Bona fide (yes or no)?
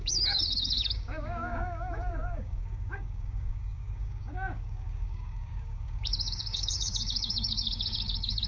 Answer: no